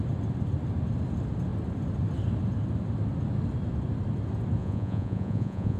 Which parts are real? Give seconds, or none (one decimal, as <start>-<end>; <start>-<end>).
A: 0.0-4.6